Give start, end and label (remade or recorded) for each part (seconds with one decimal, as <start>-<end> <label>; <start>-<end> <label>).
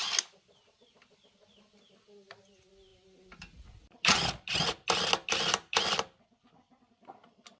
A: 0.0-7.6 recorded